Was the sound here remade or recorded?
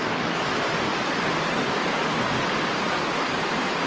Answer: recorded